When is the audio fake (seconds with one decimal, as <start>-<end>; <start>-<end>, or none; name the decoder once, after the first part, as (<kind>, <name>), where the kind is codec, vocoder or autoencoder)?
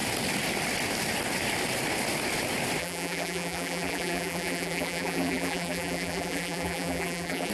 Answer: 2.8-7.5 (vocoder, BigVGAN v2)